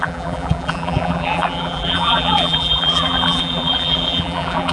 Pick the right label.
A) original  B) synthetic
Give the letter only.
B